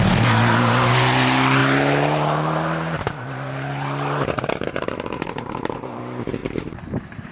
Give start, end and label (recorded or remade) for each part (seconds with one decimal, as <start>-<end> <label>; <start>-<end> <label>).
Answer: 0.0-1.6 recorded; 1.6-6.0 remade; 6.0-6.4 recorded; 6.4-7.3 remade